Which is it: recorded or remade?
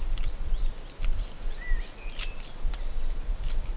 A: recorded